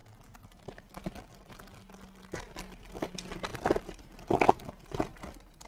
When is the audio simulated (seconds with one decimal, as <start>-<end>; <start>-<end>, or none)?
3.5-4.0; 5.1-5.7

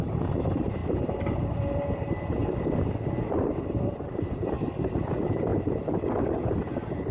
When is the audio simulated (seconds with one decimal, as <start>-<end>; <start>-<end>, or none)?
0.0-0.8; 1.4-2.4; 3.3-5.5; 6.3-7.1

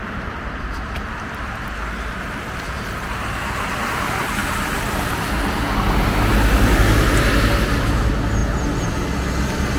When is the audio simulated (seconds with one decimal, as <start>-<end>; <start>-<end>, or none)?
none

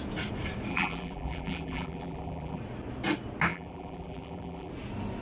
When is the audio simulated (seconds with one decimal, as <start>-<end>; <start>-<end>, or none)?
0.7-2.6; 3.5-4.7